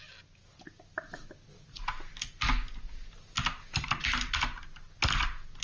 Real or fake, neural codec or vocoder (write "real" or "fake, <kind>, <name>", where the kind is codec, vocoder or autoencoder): real